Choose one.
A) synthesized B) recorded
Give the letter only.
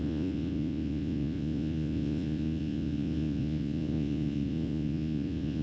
A